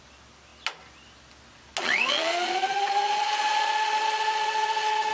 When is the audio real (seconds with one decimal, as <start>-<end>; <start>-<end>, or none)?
0.0-1.8